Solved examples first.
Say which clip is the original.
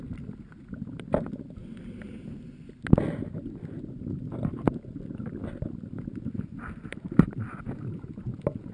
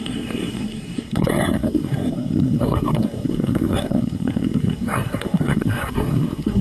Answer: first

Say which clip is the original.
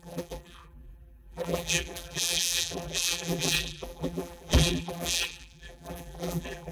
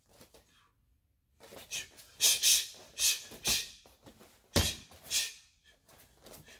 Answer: second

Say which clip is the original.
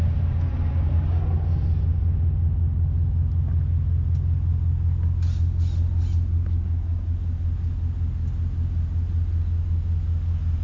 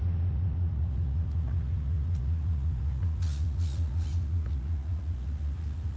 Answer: first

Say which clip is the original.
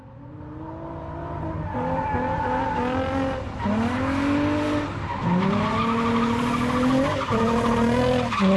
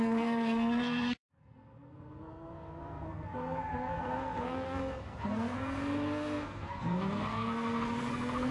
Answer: first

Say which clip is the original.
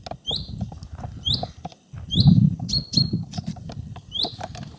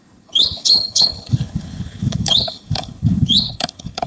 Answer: first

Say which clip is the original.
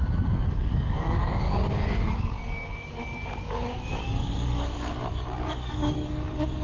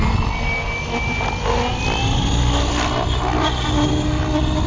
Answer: second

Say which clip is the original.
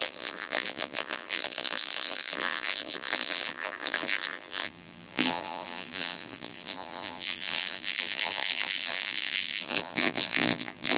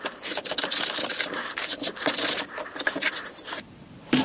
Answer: second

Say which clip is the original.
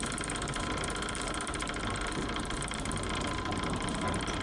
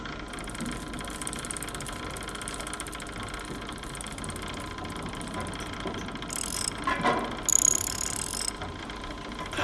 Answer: second